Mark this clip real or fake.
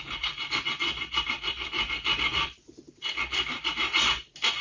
real